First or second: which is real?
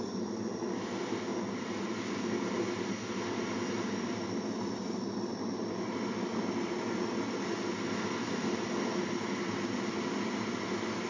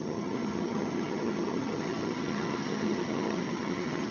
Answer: first